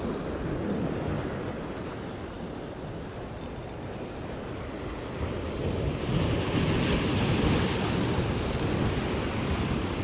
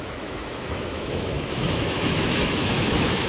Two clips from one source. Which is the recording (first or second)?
first